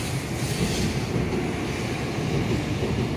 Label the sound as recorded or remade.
recorded